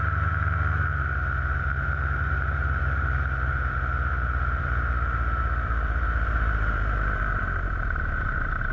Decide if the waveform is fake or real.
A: fake